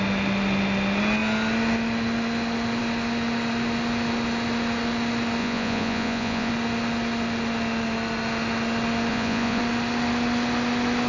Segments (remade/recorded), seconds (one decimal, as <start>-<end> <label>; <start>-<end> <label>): 0.0-5.4 recorded; 5.4-6.5 remade; 6.5-9.1 recorded; 9.1-9.6 remade; 9.6-11.1 recorded